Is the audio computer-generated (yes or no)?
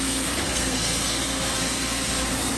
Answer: yes